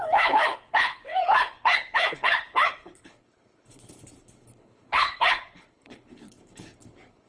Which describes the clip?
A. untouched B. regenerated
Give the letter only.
B